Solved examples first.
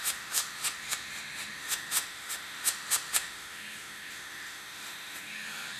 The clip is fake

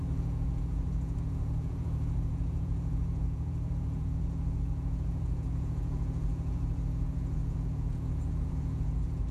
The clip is fake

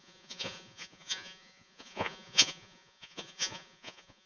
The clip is fake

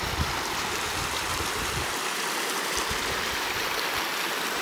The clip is fake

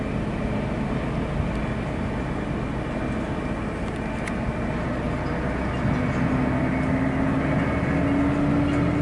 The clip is real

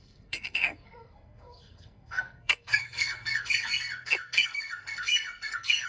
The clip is fake